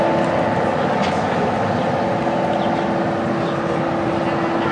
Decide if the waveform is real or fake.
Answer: real